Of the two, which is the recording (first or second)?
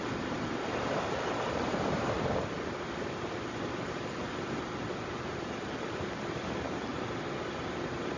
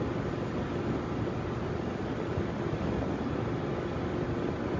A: second